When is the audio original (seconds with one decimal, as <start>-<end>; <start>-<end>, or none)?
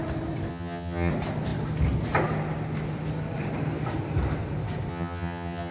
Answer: 0.0-0.5; 1.1-4.9